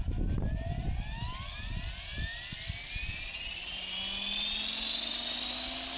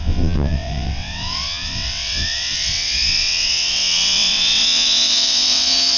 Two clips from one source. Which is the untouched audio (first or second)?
first